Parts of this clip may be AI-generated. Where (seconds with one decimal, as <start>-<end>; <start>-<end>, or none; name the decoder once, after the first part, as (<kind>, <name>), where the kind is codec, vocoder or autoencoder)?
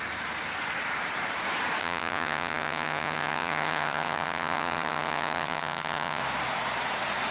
1.8-6.2 (vocoder, HiFi-GAN)